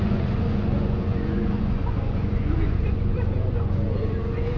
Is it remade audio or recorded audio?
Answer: remade